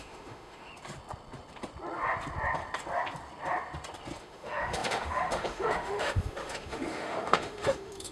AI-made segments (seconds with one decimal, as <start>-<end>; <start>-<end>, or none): 0.0-0.7; 4.2-8.1